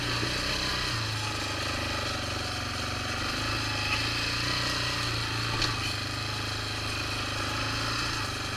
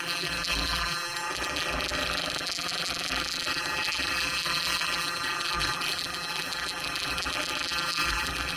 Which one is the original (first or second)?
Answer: first